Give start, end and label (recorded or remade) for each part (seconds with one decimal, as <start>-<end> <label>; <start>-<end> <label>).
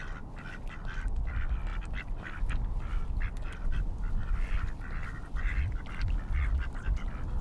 0.0-7.4 recorded